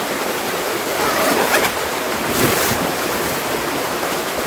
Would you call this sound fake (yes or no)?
yes